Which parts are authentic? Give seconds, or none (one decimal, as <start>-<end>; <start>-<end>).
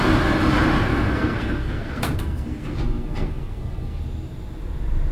0.0-0.9; 4.0-5.1